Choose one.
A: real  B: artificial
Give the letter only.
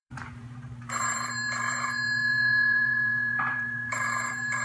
B